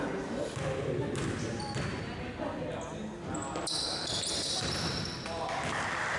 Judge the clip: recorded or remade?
recorded